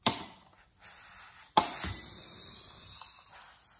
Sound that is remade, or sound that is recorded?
recorded